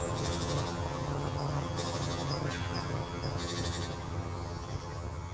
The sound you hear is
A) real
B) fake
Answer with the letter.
B